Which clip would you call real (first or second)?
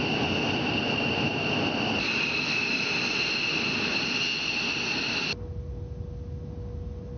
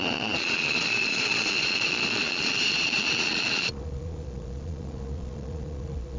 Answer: first